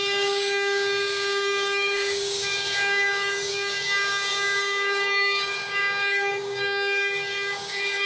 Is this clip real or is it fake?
fake